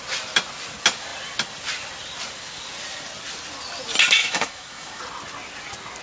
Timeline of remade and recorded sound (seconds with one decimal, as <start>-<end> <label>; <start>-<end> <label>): 0.0-4.2 recorded; 4.2-5.0 remade; 5.0-6.0 recorded